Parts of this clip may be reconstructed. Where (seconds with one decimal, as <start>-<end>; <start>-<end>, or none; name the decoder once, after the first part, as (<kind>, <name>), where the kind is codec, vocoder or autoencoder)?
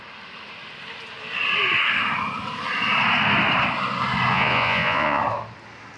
4.3-5.2 (vocoder, Vocos)